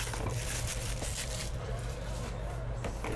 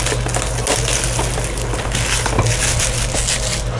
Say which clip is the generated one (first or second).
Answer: first